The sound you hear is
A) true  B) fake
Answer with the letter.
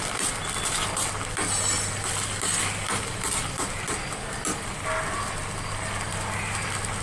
A